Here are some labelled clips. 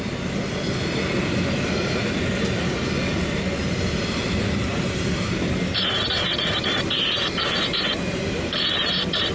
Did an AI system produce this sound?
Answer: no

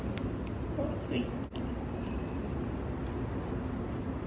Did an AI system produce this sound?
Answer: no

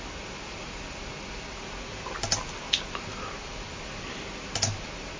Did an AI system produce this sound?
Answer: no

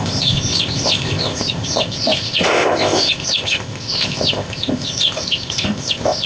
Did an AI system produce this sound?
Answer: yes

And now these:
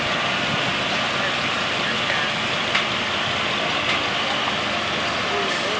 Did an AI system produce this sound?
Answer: no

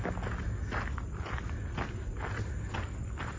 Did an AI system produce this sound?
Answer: no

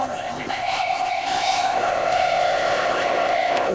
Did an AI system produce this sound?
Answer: yes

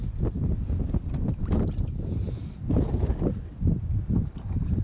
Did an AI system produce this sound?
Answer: no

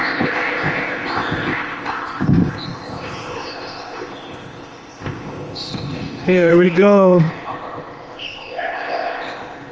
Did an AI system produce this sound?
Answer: yes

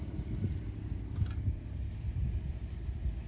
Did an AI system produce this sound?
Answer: no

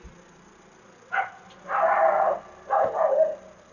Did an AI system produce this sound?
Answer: no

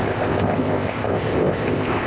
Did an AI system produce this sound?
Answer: yes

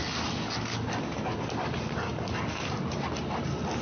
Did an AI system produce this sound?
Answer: no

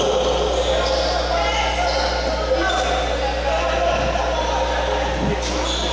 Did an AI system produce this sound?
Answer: no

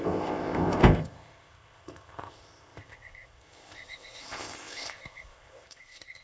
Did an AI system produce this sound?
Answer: yes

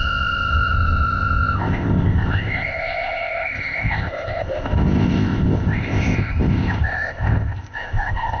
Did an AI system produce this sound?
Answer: yes